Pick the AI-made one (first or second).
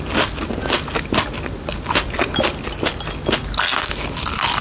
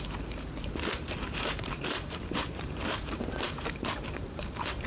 second